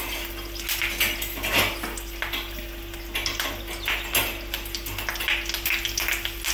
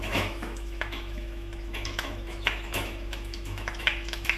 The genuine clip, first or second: first